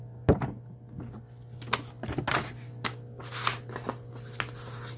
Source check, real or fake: real